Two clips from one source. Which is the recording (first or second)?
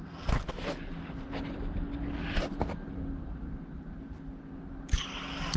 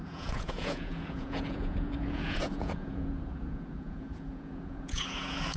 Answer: first